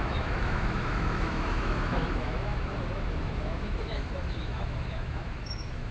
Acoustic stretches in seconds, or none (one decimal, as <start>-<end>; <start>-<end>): none